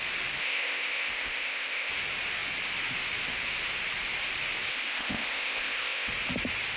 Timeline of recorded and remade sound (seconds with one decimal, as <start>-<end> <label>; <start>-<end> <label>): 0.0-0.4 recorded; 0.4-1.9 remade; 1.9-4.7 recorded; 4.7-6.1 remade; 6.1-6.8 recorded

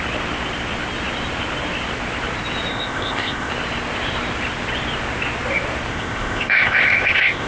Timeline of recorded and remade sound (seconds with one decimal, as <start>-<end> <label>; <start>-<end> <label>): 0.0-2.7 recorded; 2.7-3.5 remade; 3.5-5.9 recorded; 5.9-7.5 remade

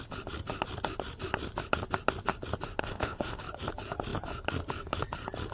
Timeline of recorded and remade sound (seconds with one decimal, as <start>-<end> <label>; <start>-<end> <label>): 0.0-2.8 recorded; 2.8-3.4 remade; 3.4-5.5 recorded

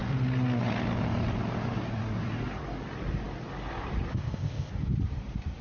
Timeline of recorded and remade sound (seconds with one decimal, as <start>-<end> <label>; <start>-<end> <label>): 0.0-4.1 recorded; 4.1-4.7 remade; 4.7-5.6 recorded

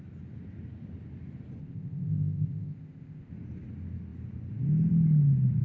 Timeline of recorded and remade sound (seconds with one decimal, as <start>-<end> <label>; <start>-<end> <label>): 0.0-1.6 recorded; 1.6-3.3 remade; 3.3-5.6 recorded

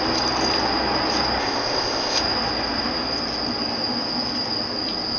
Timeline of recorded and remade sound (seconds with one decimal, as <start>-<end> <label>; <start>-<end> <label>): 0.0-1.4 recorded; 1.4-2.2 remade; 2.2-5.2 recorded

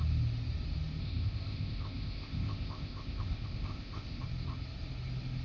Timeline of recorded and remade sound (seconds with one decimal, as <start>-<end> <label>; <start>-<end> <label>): 0.0-1.0 recorded; 1.0-4.2 remade; 4.2-5.4 recorded